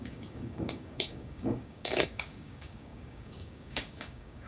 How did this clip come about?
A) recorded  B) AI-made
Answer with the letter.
B